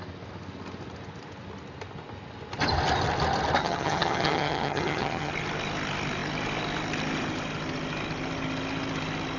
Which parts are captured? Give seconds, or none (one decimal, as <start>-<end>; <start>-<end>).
0.0-3.6; 5.3-9.4